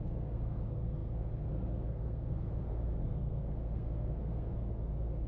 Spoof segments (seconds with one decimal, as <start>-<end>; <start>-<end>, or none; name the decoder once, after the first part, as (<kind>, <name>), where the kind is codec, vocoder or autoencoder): 0.0-5.3 (codec, SNAC)